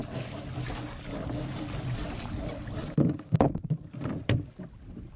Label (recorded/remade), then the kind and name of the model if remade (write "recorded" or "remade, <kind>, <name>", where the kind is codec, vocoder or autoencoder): recorded